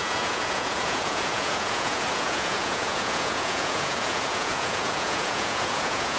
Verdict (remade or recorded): remade